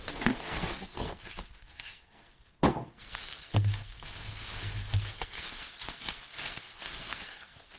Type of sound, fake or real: fake